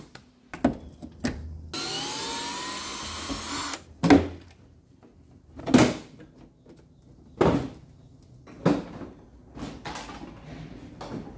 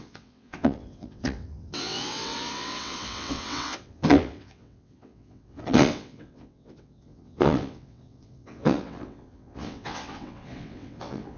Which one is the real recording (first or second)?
first